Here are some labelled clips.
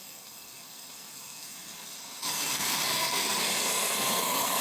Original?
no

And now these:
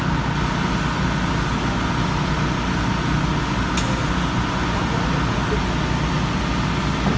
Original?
yes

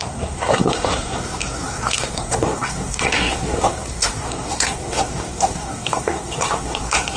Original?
no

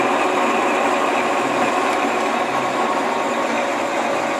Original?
yes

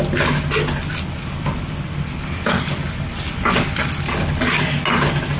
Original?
yes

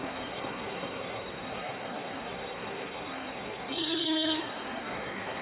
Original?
no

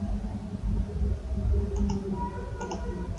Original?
yes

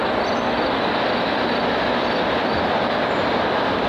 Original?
yes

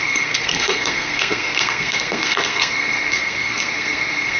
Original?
no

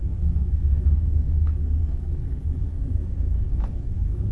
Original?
no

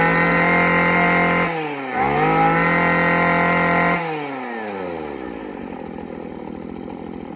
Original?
yes